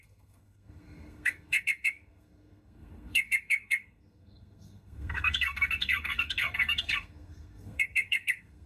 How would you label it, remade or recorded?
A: remade